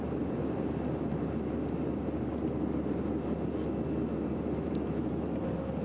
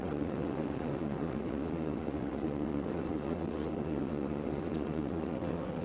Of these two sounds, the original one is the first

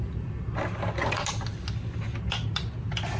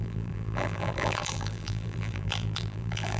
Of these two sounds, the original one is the first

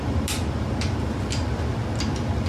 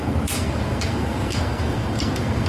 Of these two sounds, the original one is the first